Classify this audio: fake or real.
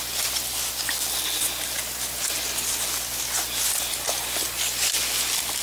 real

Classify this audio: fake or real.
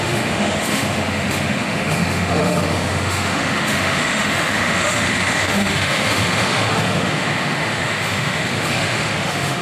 fake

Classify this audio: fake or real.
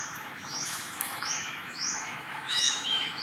fake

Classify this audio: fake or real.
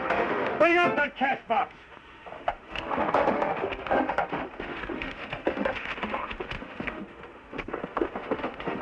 fake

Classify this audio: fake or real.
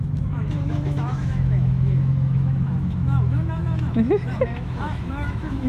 fake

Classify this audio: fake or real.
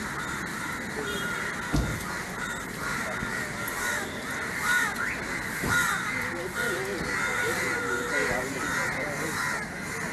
real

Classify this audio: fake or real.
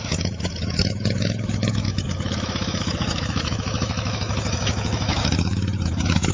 fake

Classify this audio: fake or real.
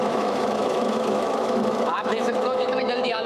fake